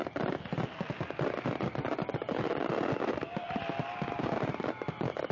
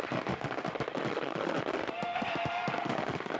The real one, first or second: first